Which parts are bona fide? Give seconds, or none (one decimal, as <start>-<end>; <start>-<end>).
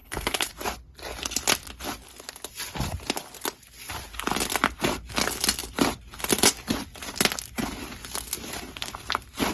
0.5-9.5